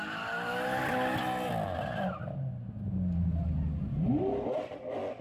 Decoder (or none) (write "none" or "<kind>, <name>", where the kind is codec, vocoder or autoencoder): none